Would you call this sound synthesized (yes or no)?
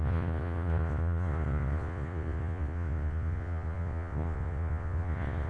yes